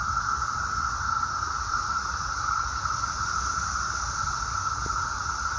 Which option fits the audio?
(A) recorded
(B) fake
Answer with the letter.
A